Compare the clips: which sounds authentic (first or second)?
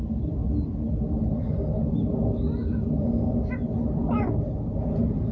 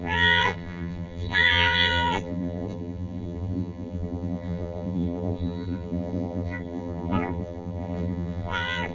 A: first